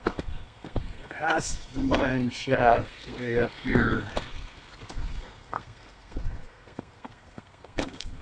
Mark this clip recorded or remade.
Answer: remade